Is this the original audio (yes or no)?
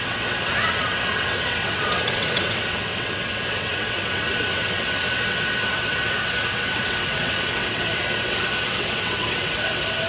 no